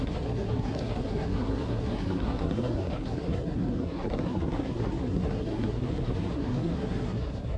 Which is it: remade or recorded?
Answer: remade